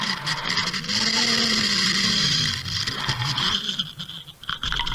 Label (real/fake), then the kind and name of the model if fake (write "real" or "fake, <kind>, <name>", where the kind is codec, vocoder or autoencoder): real